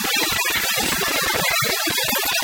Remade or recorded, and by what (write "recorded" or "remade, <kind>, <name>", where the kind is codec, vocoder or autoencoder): remade, vocoder, BigVGAN v2